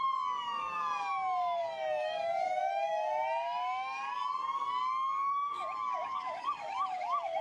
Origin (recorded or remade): remade